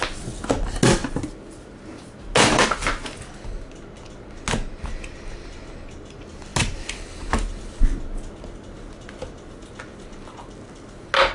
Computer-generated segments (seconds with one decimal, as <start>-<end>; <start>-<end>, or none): none